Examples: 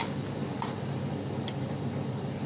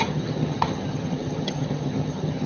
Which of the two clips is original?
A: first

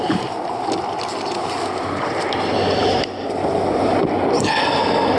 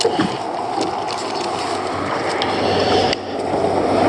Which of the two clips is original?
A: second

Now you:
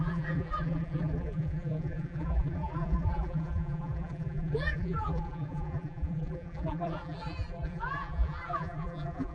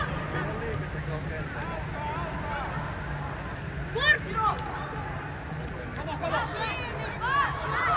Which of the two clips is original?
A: second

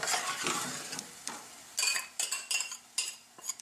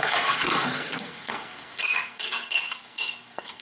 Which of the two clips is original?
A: first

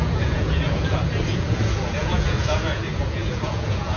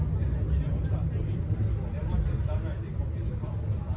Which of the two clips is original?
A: second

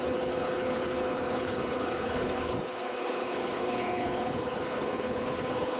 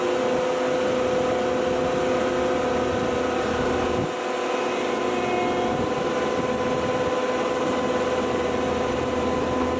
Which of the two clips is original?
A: second